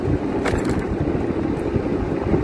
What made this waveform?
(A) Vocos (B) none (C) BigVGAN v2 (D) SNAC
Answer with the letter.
B